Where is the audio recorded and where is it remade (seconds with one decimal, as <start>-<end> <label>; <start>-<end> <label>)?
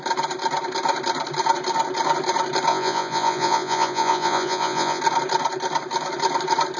0.0-2.7 recorded; 2.7-5.0 remade; 5.0-6.8 recorded